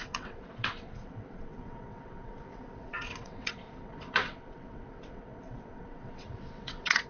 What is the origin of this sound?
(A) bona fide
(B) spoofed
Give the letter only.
B